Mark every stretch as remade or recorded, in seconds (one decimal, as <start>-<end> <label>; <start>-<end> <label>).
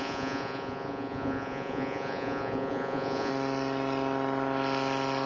0.0-3.3 remade; 3.3-5.3 recorded